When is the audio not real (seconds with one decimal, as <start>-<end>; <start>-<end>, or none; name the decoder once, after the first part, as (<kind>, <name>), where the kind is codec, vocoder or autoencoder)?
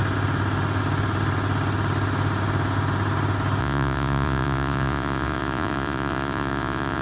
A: 3.6-7.0 (vocoder, Vocos)